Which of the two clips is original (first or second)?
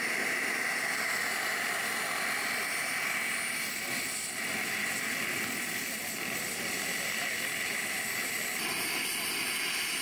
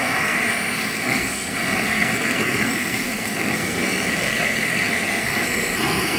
first